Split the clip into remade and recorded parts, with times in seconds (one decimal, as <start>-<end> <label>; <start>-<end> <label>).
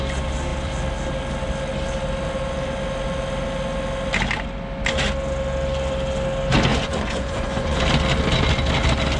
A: 0.0-6.7 recorded; 6.7-7.8 remade; 7.8-9.2 recorded